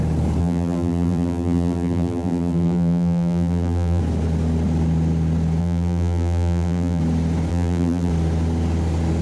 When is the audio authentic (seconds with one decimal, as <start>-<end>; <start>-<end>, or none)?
0.0-0.4; 4.0-5.6; 7.0-7.5; 8.1-9.2